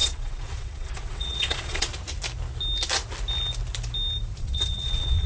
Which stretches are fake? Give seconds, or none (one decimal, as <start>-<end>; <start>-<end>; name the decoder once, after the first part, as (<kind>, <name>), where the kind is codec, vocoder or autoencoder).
0.0-1.9 (vocoder, WaveNeXt); 4.4-5.3